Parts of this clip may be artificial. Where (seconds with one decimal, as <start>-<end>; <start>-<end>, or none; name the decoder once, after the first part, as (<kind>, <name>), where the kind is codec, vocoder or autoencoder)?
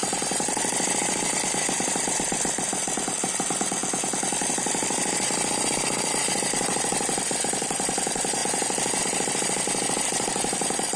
0.0-3.8 (vocoder, BigVGAN v2); 4.5-8.4; 9.0-11.0